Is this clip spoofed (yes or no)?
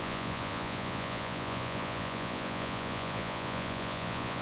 yes